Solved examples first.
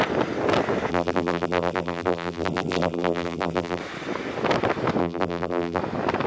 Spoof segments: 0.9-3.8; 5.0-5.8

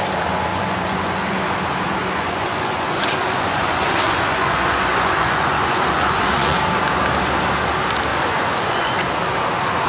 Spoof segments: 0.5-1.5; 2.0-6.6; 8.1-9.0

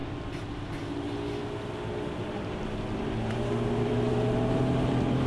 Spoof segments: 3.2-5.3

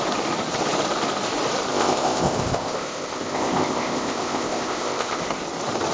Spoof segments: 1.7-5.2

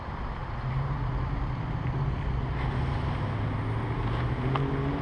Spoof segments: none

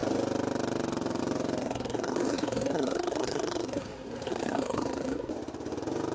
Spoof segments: 1.6-5.3

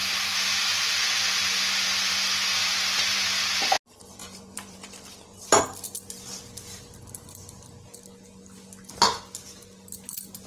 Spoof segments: 0.0-1.0; 2.6-3.4; 4.2-5.6

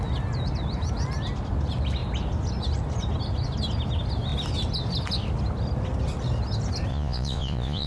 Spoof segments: 6.9-7.9